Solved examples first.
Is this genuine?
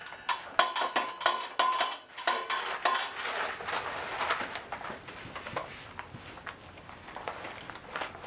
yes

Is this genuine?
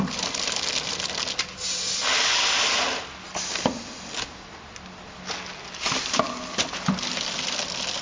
yes